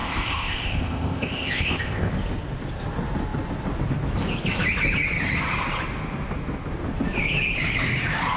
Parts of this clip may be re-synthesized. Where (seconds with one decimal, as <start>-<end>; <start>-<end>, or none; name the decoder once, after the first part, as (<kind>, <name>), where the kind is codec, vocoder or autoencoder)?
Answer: 0.0-2.1 (codec, ZipCodec)